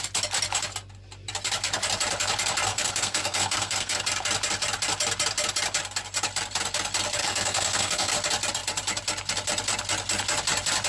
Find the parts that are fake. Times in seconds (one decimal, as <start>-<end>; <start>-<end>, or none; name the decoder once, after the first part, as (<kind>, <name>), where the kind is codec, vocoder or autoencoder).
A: 2.7-4.0 (codec, SNAC); 7.2-8.1